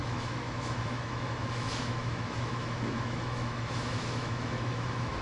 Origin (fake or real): fake